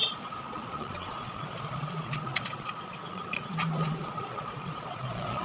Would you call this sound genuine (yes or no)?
no